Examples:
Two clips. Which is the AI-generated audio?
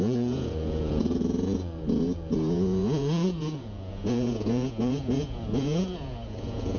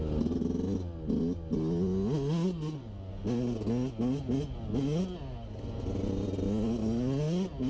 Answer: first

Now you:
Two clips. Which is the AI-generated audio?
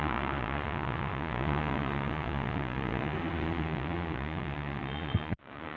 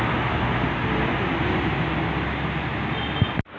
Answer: first